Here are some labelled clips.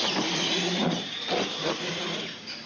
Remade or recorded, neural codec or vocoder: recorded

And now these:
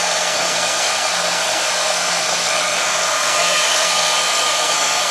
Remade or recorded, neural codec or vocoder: remade, codec, SNAC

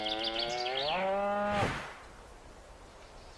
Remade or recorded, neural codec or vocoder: recorded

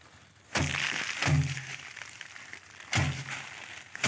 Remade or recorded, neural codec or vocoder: recorded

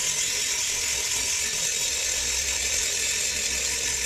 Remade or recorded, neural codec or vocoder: recorded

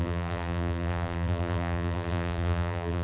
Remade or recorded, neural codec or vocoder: remade, vocoder, BigVGAN v2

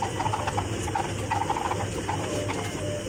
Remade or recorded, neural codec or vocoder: recorded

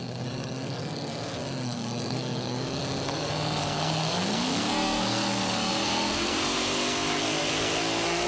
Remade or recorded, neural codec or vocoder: remade, codec, SNAC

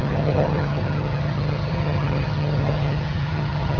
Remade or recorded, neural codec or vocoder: remade, vocoder, HiFi-GAN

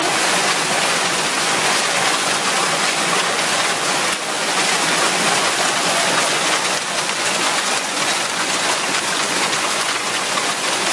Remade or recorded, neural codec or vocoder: remade, vocoder, Vocos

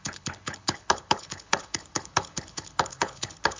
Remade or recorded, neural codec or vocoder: remade, codec, HILCodec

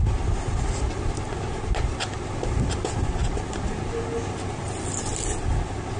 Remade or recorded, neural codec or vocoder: recorded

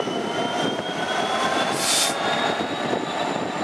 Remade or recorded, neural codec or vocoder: recorded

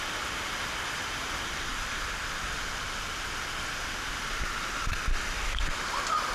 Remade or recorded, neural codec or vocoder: recorded